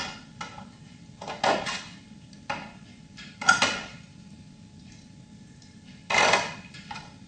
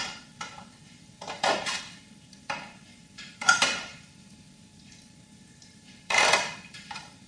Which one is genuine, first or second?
first